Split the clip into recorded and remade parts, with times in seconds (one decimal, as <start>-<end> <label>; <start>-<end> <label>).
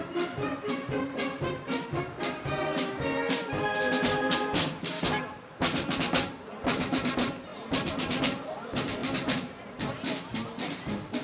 0.0-11.2 remade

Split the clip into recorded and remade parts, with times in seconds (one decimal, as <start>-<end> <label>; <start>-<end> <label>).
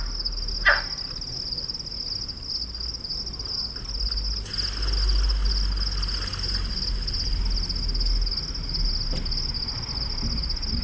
0.0-10.8 recorded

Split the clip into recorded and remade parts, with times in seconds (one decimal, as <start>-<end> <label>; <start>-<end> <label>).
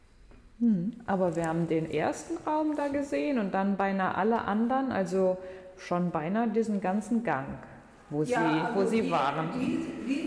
0.0-7.7 recorded; 7.7-10.3 remade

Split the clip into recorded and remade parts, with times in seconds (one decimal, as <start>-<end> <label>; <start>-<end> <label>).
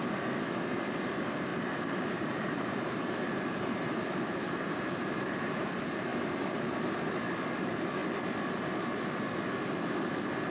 0.0-1.1 recorded; 1.1-6.1 remade; 6.1-7.6 recorded; 7.6-8.0 remade; 8.0-10.5 recorded